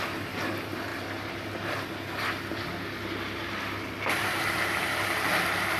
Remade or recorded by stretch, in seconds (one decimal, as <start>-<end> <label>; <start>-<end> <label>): 0.0-0.9 recorded; 0.9-4.4 remade; 4.4-5.8 recorded